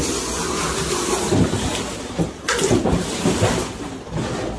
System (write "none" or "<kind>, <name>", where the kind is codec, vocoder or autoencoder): none